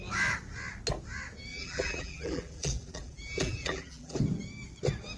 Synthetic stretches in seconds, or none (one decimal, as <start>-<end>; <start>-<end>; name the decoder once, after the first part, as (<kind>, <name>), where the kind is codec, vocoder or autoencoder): 1.5-4.2 (vocoder, BigVGAN v2)

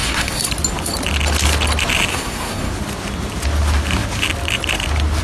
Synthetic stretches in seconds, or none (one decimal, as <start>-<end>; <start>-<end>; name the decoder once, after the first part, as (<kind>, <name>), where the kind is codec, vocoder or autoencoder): 0.0-0.5 (codec, SNAC); 2.1-2.7

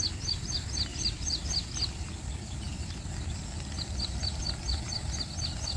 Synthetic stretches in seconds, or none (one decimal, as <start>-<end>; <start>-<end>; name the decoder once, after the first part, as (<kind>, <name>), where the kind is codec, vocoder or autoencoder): 0.9-4.4 (vocoder, BigVGAN v2)

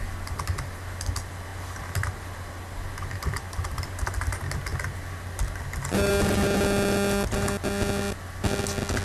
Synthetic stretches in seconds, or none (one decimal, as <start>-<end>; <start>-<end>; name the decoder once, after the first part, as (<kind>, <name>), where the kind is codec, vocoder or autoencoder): none

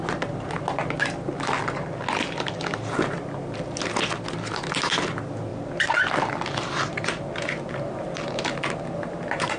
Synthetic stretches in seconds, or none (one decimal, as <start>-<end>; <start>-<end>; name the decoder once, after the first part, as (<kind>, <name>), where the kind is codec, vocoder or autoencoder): 5.5-7.2 (vocoder, BigVGAN v2)

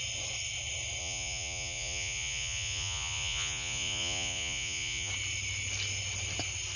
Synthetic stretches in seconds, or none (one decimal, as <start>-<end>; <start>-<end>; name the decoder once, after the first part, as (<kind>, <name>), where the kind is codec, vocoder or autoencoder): 1.0-5.1 (vocoder, Vocos)